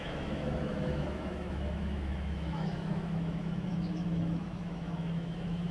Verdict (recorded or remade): remade